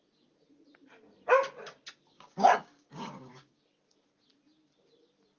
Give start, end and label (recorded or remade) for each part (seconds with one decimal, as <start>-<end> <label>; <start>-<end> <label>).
0.0-2.1 recorded; 2.1-3.6 remade; 3.6-5.4 recorded